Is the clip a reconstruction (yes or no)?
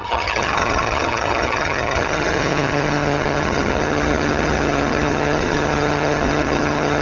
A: yes